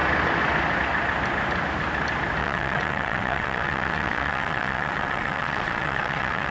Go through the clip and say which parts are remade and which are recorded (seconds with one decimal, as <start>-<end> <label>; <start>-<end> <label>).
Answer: 0.0-2.4 recorded; 2.4-6.5 remade